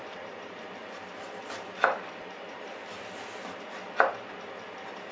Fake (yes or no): yes